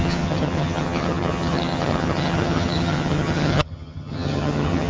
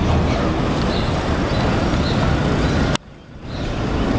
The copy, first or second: first